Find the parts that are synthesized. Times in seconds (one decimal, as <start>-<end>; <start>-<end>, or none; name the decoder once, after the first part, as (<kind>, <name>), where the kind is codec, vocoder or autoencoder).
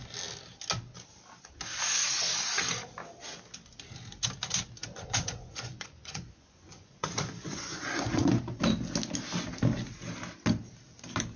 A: 4.8-8.4 (vocoder, Vocos)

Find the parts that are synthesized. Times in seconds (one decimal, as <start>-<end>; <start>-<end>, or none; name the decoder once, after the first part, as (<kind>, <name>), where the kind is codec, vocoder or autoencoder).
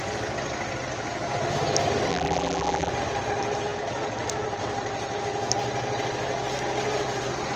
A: 2.1-2.9 (vocoder, BigVGAN v2)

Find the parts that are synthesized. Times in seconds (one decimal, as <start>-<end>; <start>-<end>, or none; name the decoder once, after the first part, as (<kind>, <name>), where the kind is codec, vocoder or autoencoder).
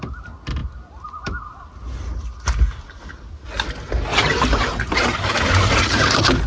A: none